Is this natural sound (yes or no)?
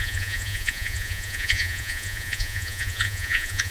no